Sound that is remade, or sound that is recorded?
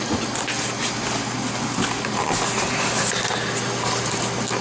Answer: recorded